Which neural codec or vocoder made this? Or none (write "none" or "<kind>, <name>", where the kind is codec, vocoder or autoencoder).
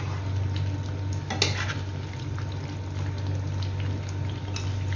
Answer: none